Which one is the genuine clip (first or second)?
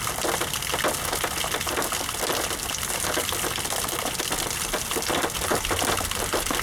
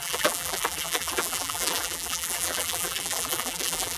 first